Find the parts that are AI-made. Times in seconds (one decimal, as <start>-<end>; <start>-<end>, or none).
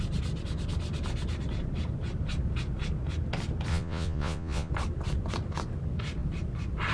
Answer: 3.7-4.7